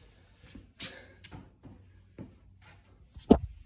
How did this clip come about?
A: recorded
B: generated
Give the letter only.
A